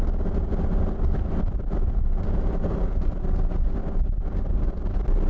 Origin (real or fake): real